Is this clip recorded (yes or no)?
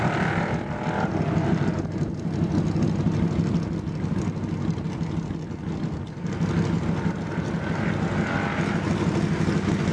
yes